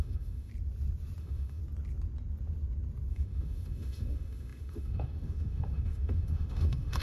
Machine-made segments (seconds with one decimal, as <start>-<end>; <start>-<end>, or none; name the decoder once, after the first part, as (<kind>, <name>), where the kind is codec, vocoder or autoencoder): 0.0-0.5 (autoencoder, DAC-VAE); 1.2-1.6; 3.1-7.0